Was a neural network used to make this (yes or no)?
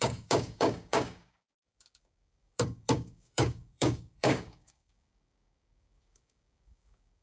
yes